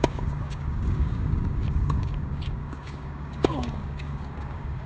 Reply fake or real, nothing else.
fake